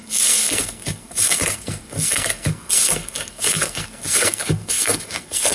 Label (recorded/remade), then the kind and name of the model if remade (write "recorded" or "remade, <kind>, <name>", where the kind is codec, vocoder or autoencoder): remade, codec, SNAC